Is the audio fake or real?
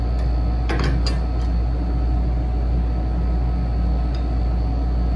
real